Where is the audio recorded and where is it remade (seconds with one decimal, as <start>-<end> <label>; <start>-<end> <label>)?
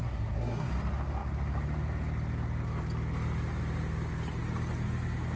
0.0-0.7 remade; 0.7-5.4 recorded